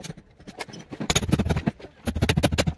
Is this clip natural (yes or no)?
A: yes